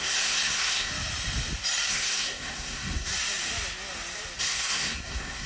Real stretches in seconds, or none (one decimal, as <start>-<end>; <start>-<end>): 0.9-1.9; 3.1-4.4